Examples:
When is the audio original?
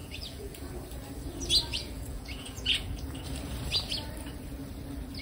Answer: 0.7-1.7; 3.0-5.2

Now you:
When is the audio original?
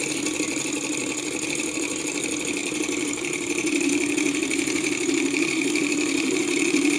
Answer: 0.0-1.0; 2.1-2.6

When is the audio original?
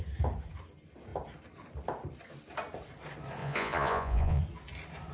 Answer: 0.0-3.4; 4.4-5.1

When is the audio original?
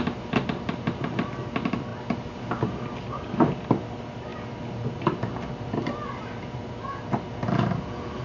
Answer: 0.0-8.2